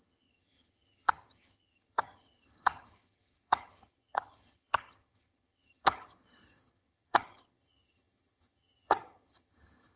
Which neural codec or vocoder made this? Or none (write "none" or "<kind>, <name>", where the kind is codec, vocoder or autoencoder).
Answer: vocoder, HiFi-GAN